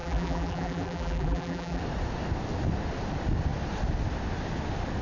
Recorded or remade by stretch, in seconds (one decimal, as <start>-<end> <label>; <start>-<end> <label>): 0.0-1.8 remade; 1.8-5.0 recorded